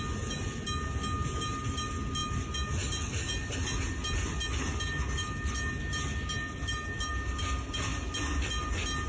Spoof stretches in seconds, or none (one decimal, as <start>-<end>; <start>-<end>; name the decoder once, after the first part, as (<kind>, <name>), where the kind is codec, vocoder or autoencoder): none